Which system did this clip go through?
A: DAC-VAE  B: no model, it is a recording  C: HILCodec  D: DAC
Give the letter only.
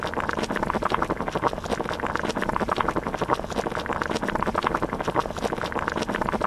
B